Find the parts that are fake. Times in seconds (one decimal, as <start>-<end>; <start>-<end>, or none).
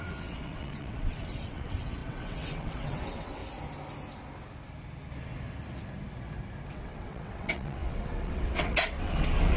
0.0-3.4; 6.7-9.6